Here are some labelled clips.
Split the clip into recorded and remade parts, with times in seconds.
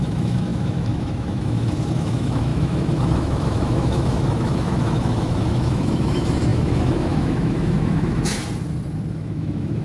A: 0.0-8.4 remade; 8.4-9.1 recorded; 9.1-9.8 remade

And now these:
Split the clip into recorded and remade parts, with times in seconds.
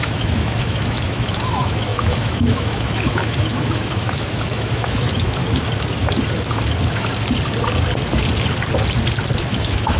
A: 0.0-5.4 remade; 5.4-9.5 recorded; 9.5-10.0 remade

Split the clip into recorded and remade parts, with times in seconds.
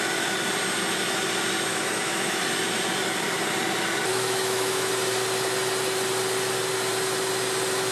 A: 0.0-1.7 recorded; 1.7-2.4 remade; 2.4-4.1 recorded; 4.1-4.9 remade; 4.9-7.9 recorded